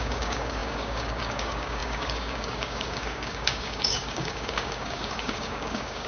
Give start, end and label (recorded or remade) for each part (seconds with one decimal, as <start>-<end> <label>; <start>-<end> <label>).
0.0-6.1 remade